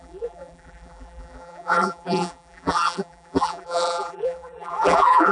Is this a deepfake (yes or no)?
yes